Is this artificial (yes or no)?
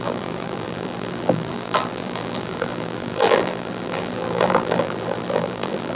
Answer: yes